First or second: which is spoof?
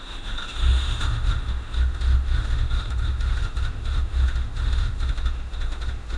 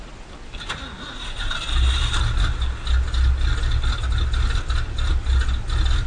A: first